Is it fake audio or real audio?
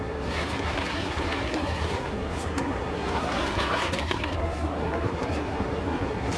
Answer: fake